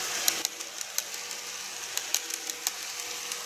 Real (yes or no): yes